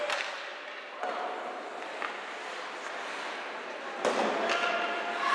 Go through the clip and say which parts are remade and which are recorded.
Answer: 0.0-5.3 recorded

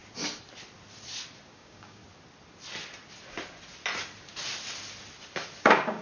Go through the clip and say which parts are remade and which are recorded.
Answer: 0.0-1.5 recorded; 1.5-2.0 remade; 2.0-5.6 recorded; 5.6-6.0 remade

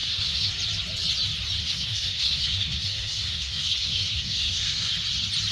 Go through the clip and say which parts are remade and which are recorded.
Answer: 0.0-0.5 remade; 0.5-1.6 recorded; 1.6-4.9 remade; 4.9-5.5 recorded

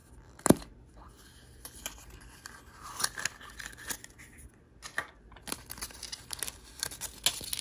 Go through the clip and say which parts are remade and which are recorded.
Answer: 0.0-7.6 recorded

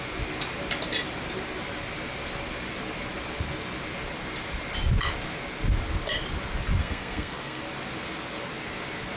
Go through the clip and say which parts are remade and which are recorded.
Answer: 0.0-6.8 recorded; 6.8-7.6 remade; 7.6-9.2 recorded